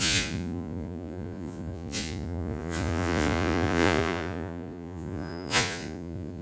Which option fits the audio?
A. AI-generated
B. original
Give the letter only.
A